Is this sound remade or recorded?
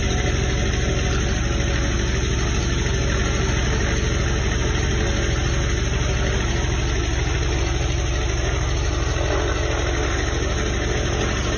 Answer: recorded